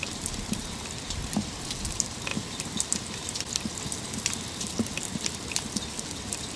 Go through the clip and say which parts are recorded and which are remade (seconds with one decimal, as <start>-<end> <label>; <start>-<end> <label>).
0.0-6.6 recorded